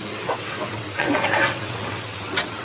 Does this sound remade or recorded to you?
remade